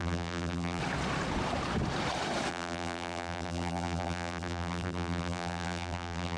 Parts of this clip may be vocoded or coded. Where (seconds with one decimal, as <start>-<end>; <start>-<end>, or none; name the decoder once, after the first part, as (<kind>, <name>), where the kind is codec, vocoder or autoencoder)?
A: 0.0-0.8 (vocoder, BigVGAN v2); 2.5-6.4